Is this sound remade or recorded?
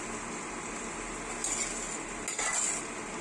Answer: recorded